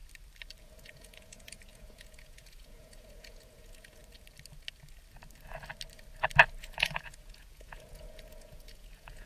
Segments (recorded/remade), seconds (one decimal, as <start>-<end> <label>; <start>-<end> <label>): 0.0-0.6 recorded; 0.6-4.0 remade; 4.0-6.6 recorded; 6.6-9.3 remade